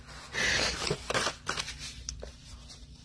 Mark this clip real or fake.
real